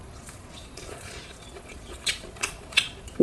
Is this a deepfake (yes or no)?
yes